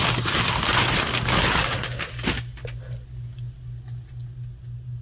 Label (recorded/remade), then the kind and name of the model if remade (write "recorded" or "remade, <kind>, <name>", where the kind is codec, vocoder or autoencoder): recorded